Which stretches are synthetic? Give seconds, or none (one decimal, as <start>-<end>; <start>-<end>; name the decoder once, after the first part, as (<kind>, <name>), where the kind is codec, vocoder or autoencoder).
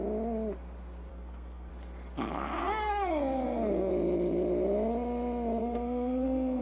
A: 1.1-1.7 (codec, SNAC); 2.6-3.9; 5.6-6.6